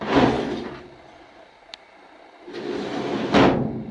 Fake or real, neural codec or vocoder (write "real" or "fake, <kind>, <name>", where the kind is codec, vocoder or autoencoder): real